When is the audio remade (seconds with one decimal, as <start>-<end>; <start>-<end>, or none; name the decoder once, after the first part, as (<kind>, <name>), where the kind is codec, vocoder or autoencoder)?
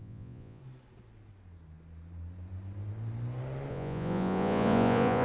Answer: 0.0-0.6 (vocoder, Vocos); 3.7-5.2